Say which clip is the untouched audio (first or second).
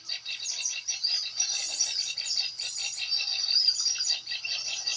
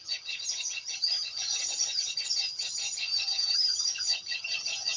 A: first